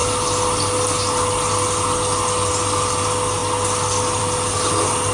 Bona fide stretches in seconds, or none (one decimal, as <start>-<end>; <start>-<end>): 0.0-5.1

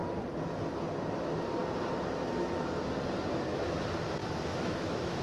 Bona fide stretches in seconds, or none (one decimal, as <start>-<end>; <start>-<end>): 0.0-3.3; 3.8-4.2